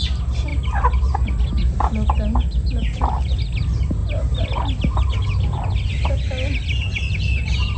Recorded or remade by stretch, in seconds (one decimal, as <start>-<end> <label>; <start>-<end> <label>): 0.0-7.8 recorded